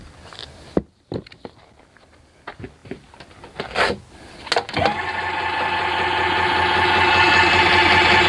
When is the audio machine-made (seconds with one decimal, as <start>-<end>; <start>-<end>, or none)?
none